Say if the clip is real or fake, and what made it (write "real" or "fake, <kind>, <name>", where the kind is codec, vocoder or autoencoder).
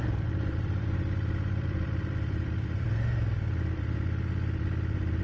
fake, vocoder, BigVGAN v2